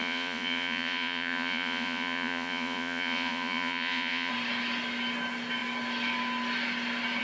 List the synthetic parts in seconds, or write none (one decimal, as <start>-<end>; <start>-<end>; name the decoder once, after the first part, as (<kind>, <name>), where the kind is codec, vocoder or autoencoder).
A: 0.0-4.3 (vocoder, Vocos)